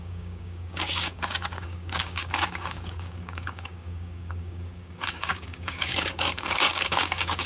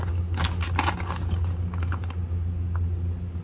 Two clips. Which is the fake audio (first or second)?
first